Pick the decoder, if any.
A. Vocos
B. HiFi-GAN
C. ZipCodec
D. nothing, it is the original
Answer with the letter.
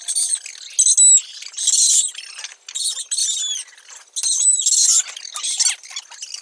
D